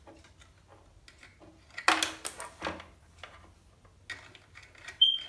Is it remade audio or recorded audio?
recorded